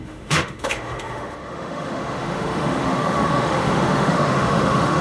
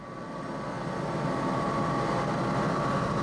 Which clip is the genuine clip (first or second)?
second